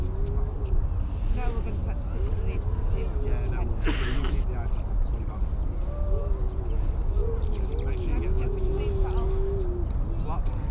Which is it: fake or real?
real